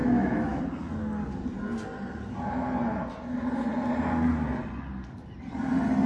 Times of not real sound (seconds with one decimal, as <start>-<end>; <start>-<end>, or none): 0.0-0.6